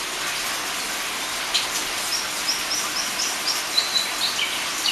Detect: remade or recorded recorded